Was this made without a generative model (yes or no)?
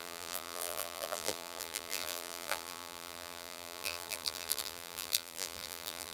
no